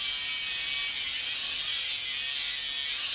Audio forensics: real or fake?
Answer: real